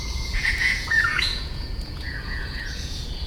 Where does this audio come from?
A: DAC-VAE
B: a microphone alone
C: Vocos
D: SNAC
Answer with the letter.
C